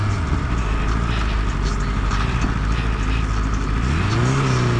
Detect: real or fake real